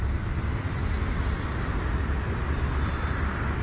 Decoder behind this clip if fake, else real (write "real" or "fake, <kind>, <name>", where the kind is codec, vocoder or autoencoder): real